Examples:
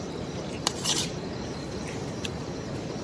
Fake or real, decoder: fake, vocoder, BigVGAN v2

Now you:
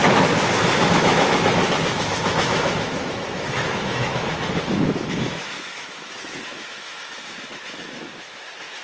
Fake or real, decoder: fake, autoencoder, DAC-VAE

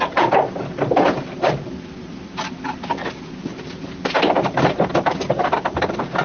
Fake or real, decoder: real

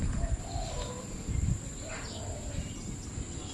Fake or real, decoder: real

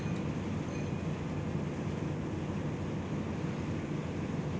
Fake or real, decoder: real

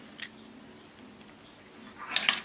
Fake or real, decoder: real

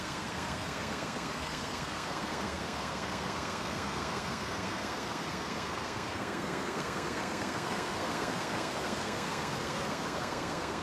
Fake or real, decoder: fake, codec, SNAC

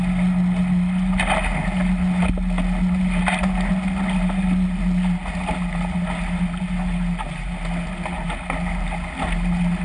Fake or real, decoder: real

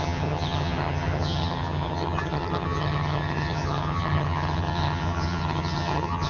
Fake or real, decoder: fake, vocoder, HiFi-GAN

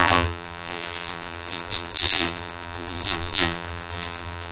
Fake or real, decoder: fake, vocoder, BigVGAN v2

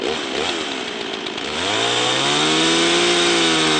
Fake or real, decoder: real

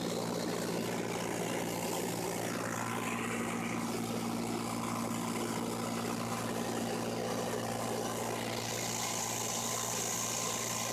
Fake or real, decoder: real